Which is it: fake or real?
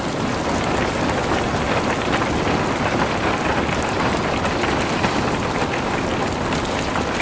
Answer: real